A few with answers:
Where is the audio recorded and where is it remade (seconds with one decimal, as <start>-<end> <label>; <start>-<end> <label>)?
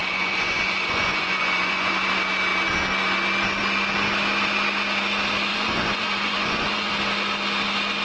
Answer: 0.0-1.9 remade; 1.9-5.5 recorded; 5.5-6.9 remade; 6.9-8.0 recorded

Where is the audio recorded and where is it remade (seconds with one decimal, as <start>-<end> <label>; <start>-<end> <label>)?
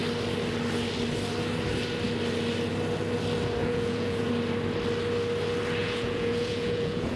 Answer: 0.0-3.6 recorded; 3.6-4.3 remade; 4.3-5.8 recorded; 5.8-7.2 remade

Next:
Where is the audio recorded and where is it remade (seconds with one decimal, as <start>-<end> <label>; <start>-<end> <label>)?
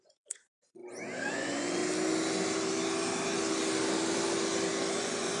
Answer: 0.0-0.8 remade; 0.8-1.3 recorded; 1.3-1.8 remade; 1.8-5.0 recorded; 5.0-5.4 remade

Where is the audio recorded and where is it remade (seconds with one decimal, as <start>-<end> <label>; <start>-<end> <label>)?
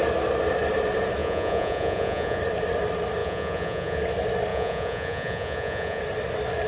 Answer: 0.0-1.2 recorded; 1.2-2.4 remade; 2.4-3.2 recorded; 3.2-4.0 remade; 4.0-4.5 recorded; 4.5-6.0 remade; 6.0-6.7 recorded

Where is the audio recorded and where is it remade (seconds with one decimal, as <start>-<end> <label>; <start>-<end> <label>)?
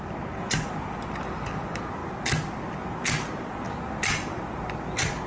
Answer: 0.0-5.3 recorded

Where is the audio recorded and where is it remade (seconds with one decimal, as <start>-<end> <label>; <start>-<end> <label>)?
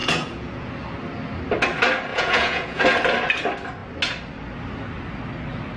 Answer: 0.0-0.7 remade; 0.7-2.1 recorded; 2.1-2.8 remade; 2.8-5.8 recorded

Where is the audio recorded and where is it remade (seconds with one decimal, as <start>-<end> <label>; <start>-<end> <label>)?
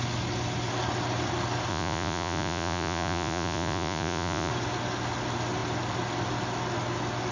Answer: 0.0-1.7 recorded; 1.7-4.5 remade; 4.5-7.3 recorded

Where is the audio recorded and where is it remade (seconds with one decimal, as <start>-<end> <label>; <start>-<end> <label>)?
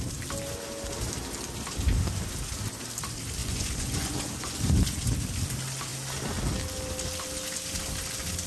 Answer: 0.0-3.4 recorded; 3.4-4.7 remade; 4.7-8.5 recorded